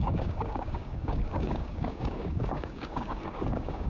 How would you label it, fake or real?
fake